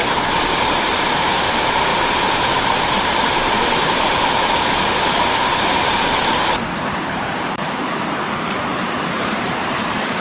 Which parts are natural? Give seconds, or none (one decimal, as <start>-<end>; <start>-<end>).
none